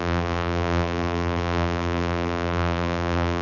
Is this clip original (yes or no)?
no